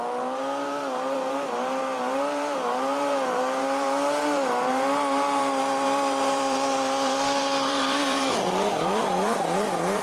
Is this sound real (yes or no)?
no